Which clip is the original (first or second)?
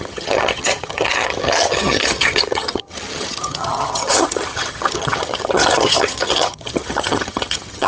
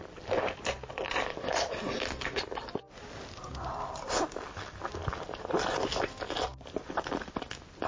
second